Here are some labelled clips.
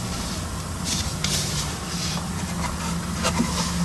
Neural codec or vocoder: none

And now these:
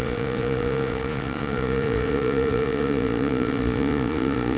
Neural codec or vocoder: vocoder, Vocos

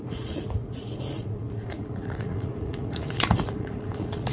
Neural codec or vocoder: vocoder, Vocos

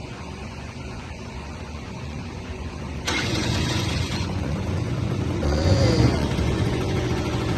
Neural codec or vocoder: vocoder, Vocos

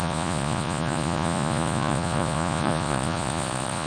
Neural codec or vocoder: vocoder, Vocos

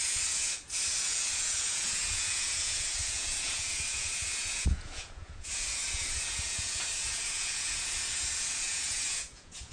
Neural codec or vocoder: vocoder, Vocos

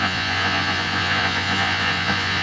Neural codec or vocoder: vocoder, Vocos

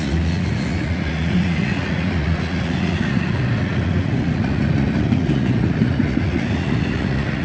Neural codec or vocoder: vocoder, Vocos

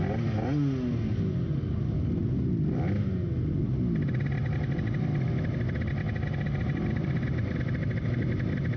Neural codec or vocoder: none